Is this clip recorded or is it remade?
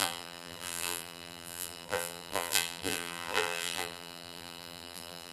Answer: remade